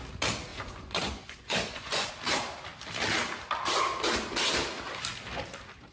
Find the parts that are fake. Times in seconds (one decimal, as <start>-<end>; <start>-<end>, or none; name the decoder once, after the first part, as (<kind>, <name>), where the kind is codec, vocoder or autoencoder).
0.5-2.1 (vocoder, Vocos)